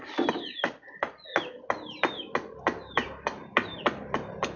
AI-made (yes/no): no